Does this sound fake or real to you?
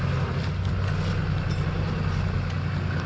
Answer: real